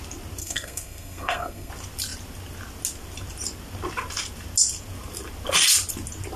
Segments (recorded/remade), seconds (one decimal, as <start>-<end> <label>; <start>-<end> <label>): 0.0-0.4 recorded; 0.4-1.7 remade; 1.7-6.4 recorded